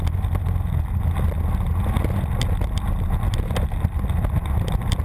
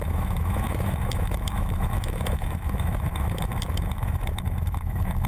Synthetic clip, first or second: second